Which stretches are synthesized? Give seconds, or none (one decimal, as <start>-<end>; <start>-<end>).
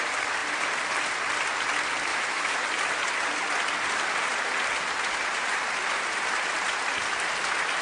2.1-2.6